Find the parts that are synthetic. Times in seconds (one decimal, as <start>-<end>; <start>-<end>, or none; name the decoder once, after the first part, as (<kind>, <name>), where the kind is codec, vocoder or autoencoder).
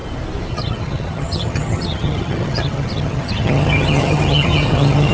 0.5-5.1 (vocoder, HiFi-GAN)